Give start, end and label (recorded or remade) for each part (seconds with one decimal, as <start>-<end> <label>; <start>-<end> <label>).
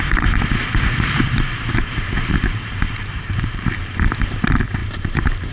0.0-0.6 recorded; 0.6-3.9 remade; 3.9-4.8 recorded; 4.8-5.5 remade